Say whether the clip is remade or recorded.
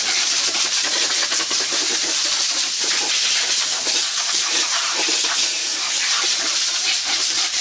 remade